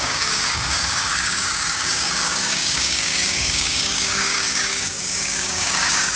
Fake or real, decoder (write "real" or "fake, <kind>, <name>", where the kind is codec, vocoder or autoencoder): fake, codec, DAC